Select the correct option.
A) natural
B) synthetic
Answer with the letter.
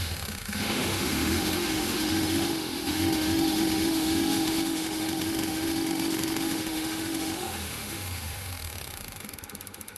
B